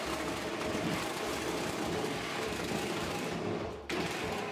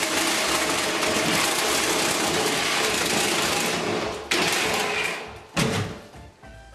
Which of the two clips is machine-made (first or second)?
first